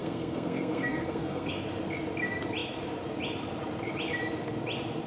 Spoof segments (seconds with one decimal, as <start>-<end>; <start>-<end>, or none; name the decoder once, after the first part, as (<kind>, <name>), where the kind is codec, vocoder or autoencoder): 0.0-1.5 (codec, SNAC)